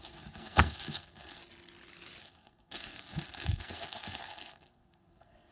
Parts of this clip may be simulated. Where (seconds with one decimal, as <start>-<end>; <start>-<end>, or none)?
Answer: 0.0-1.4; 2.2-5.5